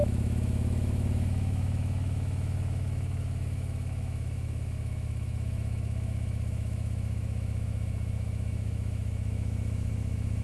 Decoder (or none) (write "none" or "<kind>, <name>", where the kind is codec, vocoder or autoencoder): autoencoder, DAC-VAE